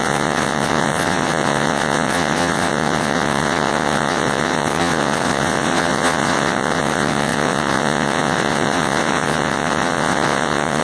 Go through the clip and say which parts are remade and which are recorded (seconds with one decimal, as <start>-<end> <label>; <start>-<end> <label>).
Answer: 0.0-10.8 remade